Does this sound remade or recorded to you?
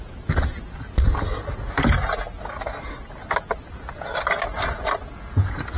recorded